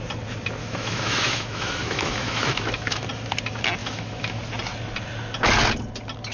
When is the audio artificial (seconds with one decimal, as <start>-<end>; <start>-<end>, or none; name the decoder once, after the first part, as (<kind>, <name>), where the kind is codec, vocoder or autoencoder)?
0.6-3.0 (autoencoder, DAC-VAE); 3.8-4.4